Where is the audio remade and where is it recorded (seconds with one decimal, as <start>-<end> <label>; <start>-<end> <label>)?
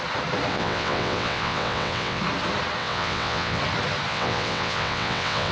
0.0-0.5 recorded; 0.5-2.2 remade; 2.2-2.8 recorded; 2.8-3.6 remade; 3.6-4.1 recorded; 4.1-5.5 remade